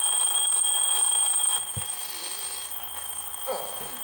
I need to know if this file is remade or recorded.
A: remade